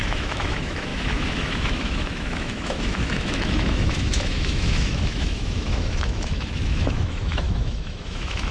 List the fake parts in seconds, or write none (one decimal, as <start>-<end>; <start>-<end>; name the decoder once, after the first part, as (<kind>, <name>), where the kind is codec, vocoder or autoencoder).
0.0-8.5 (autoencoder, DAC-VAE)